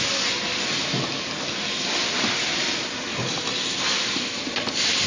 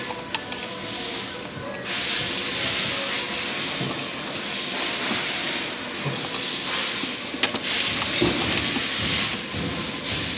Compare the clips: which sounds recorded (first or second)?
second